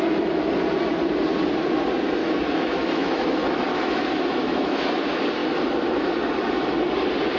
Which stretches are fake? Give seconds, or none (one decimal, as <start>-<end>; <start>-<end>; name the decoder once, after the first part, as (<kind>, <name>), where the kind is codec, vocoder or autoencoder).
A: 2.2-4.9 (autoencoder, DAC-VAE)